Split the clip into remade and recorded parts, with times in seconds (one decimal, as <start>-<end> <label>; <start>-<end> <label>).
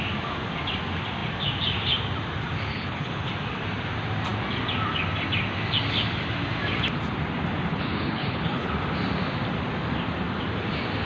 0.0-2.7 recorded; 2.7-3.3 remade; 3.3-7.7 recorded; 7.7-8.7 remade; 8.7-11.1 recorded